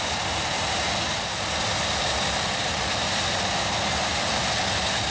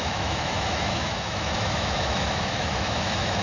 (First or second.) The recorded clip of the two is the first